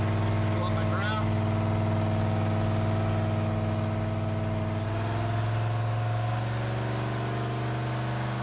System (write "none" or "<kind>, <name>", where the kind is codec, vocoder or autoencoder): none